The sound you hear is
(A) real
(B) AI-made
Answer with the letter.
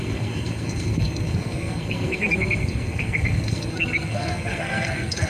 B